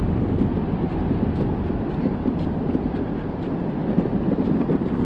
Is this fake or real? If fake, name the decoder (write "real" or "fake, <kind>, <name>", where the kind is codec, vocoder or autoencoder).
real